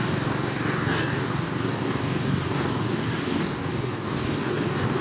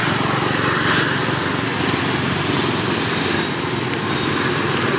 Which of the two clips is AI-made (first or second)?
first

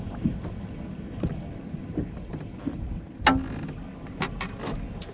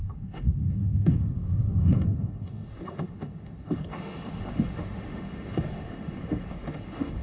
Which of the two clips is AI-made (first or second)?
second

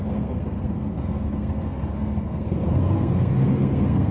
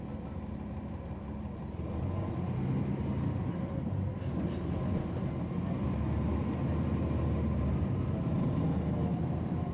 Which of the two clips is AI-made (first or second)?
first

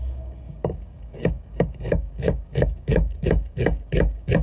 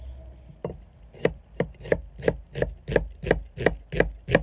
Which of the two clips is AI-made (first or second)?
first